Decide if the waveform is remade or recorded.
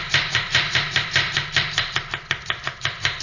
remade